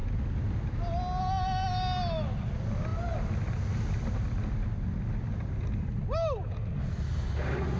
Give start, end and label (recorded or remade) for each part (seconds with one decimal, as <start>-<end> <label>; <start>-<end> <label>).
0.0-7.8 recorded